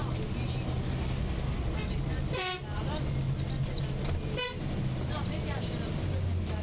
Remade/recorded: recorded